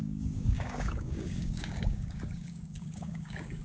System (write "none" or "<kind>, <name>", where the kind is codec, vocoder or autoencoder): codec, DAC